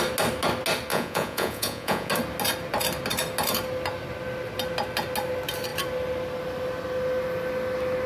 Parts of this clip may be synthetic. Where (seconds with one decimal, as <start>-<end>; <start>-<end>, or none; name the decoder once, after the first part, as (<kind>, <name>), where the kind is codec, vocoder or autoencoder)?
0.9-2.1 (vocoder, Vocos)